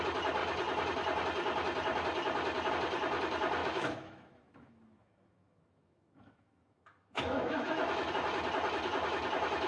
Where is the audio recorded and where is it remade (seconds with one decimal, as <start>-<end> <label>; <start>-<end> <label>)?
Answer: 0.0-3.6 recorded; 3.6-8.1 remade; 8.1-9.7 recorded